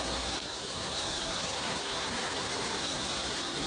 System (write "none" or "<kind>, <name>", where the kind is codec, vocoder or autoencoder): codec, SNAC